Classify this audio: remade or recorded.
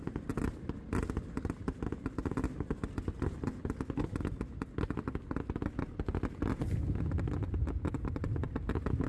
recorded